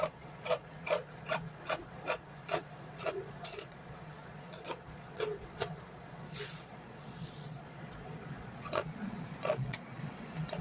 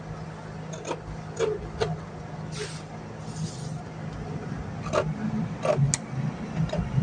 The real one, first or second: second